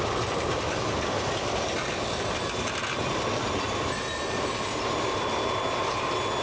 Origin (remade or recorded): recorded